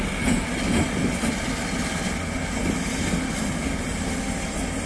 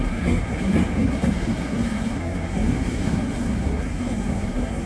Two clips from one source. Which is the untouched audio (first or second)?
first